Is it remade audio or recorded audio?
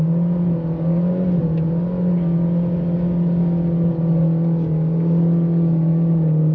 recorded